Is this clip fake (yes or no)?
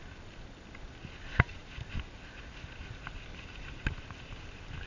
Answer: no